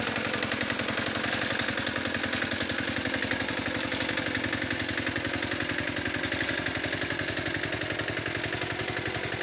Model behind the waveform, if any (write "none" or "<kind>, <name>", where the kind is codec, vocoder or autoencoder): none